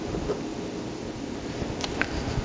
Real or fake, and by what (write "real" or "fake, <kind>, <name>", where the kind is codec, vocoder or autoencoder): real